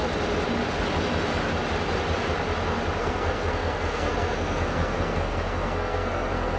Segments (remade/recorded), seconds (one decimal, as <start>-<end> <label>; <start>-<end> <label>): 0.0-3.0 recorded; 3.0-6.6 remade